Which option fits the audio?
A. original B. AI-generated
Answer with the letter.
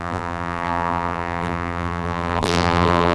B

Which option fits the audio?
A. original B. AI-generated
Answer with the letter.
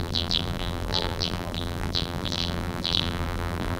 B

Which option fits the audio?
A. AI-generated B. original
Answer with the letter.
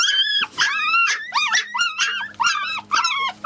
B